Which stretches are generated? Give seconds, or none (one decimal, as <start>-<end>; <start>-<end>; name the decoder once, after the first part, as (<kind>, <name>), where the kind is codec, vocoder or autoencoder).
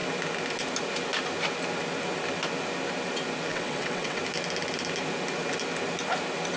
3.5-4.2 (vocoder, WaveNeXt)